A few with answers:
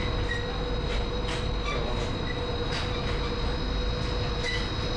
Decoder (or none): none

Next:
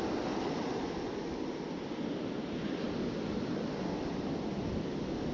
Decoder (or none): none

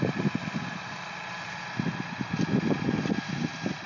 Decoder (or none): none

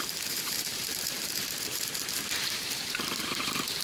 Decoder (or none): vocoder, BigVGAN v2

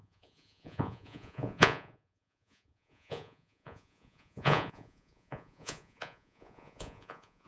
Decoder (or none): vocoder, Vocos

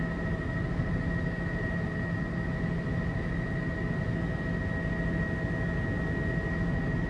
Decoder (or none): none